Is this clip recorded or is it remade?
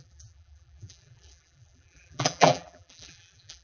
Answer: remade